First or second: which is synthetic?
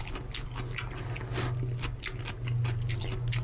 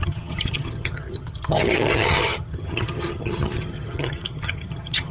second